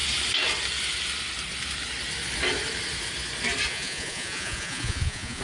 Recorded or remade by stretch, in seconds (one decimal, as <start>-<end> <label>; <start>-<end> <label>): 0.0-3.7 recorded; 3.7-5.4 remade